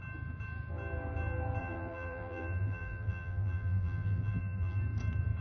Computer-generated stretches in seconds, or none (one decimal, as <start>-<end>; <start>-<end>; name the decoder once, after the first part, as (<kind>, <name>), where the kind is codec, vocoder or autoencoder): 1.6-4.8 (vocoder, BigVGAN v2)